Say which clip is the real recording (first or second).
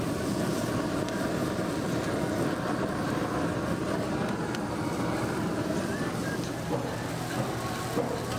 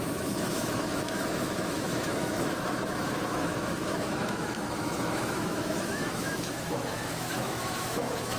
first